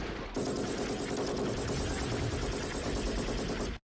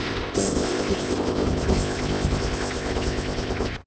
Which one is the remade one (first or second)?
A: second